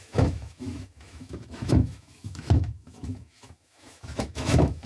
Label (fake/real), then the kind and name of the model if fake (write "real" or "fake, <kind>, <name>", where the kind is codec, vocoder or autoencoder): fake, autoencoder, DAC-VAE